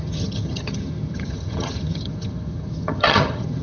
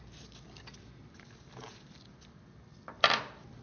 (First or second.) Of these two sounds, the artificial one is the first